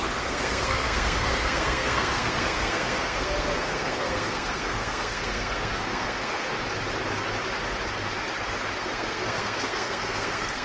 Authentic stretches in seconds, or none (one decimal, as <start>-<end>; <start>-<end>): 6.5-8.8